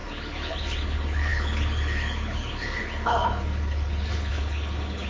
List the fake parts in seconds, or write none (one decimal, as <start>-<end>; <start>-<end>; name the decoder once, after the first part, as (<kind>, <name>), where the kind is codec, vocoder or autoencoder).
0.0-5.1 (codec, HILCodec)